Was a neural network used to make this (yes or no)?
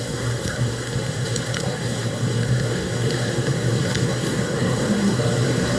yes